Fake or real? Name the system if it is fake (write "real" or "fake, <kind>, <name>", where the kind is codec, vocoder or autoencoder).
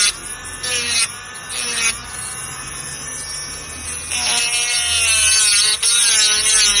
real